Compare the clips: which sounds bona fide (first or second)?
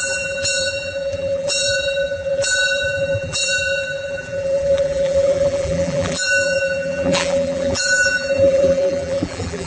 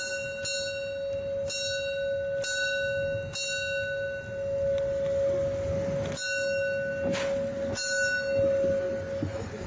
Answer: second